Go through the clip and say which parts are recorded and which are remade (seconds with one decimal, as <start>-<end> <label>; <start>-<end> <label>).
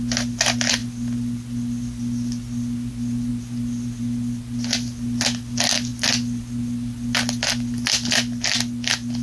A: 0.0-9.2 recorded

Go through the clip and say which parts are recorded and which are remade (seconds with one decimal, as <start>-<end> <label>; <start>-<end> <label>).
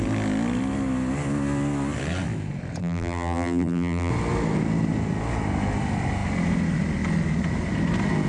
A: 0.0-2.8 recorded; 2.8-4.1 remade; 4.1-8.3 recorded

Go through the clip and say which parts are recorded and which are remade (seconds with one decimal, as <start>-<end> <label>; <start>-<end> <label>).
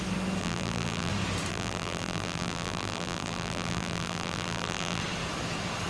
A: 0.0-0.4 recorded; 0.4-1.1 remade; 1.1-1.5 recorded; 1.5-5.0 remade; 5.0-5.9 recorded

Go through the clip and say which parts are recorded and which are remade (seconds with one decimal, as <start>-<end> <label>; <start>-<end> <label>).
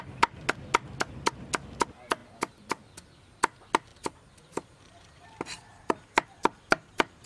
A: 0.0-3.9 recorded; 3.9-7.3 remade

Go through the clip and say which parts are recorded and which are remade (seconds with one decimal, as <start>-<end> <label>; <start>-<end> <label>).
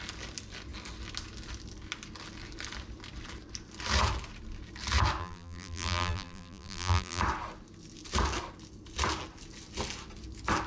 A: 0.0-5.2 recorded; 5.2-7.2 remade; 7.2-10.7 recorded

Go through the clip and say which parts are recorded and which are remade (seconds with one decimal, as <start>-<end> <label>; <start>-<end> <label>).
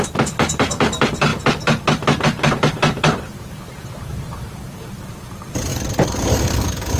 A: 0.0-1.3 remade; 1.3-2.2 recorded; 2.2-7.0 remade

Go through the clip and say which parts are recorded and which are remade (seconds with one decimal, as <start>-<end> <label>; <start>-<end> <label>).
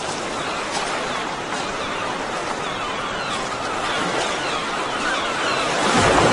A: 0.0-2.4 remade; 2.4-4.0 recorded; 4.0-6.3 remade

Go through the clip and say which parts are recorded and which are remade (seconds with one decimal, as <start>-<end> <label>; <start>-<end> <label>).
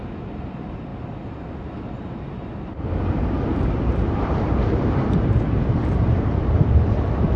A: 0.0-3.5 recorded; 3.5-7.4 remade